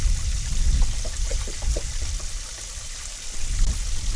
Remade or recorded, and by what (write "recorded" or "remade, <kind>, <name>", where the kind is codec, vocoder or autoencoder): recorded